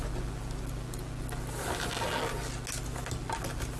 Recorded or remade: recorded